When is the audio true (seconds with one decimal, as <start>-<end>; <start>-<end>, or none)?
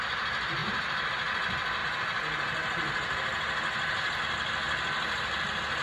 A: 0.0-5.8